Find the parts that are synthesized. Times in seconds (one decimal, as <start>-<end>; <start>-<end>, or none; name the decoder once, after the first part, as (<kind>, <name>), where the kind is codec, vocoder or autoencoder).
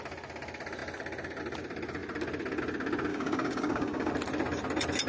3.1-4.1 (codec, DAC)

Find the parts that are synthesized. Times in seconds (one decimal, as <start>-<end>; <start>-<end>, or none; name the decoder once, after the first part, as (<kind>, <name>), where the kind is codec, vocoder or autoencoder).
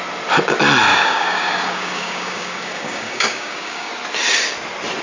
0.9-3.9 (codec, DAC)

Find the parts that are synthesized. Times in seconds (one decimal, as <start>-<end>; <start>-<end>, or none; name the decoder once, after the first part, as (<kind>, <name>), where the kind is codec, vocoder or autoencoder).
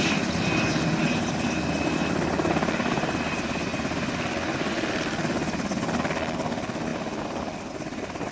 6.9-7.7 (vocoder, BigVGAN v2)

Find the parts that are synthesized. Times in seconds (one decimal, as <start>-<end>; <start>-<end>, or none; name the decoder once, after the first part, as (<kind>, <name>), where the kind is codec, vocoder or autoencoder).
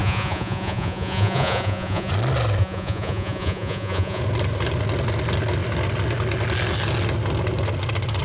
0.0-2.1 (vocoder, Vocos); 2.6-4.2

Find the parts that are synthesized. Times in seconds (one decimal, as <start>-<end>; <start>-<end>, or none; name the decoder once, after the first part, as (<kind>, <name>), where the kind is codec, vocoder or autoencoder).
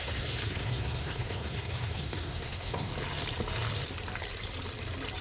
0.0-2.9 (codec, SNAC)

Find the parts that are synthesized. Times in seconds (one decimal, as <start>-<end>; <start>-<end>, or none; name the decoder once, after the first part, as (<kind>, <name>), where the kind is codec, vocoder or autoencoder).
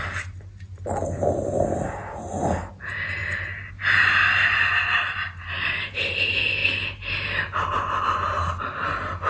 none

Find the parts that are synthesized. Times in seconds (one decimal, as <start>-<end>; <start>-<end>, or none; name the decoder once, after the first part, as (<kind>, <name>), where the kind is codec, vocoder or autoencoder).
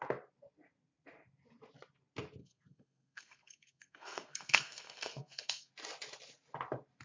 2.4-5.7 (codec, SNAC)